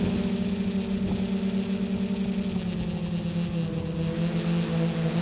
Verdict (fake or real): real